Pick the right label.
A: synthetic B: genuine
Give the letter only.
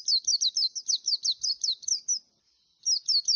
B